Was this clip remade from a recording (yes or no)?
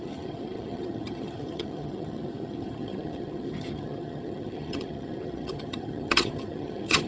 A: yes